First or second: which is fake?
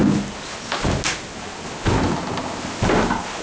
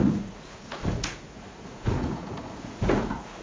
second